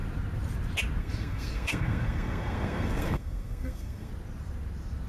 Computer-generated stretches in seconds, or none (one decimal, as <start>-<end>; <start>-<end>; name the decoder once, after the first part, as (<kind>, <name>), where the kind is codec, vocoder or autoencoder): 1.0-4.1 (codec, SNAC)